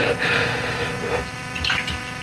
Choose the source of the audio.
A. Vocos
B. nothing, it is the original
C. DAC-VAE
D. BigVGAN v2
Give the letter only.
D